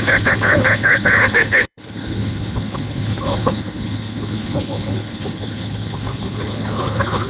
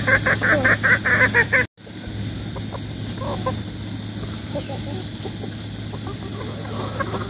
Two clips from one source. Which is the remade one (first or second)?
first